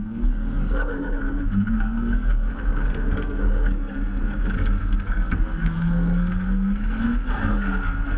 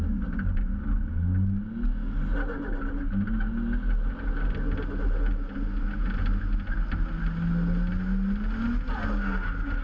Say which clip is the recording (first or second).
second